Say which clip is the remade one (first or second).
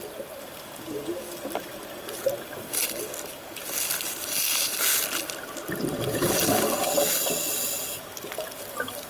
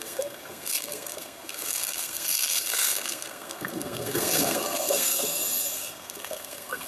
second